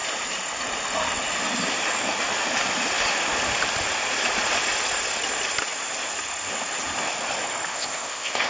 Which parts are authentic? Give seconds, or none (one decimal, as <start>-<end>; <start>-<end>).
0.0-7.7